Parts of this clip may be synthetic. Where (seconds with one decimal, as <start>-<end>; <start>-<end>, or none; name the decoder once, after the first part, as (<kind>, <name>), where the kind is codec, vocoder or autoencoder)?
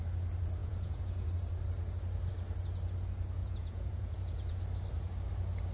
0.6-1.3 (vocoder, Vocos); 3.4-4.6